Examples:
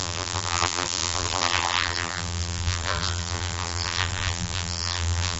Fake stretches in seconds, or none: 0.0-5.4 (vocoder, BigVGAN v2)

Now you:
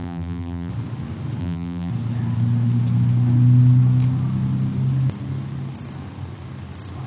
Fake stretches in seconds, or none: 0.0-0.7 (vocoder, BigVGAN v2); 1.4-1.9

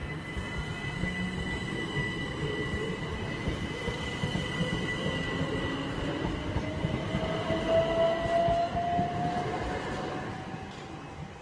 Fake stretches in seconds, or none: none